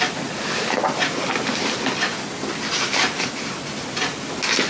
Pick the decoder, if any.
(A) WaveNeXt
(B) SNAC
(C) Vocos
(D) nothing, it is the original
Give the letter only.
D